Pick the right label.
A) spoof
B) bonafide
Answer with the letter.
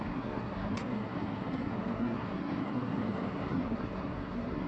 A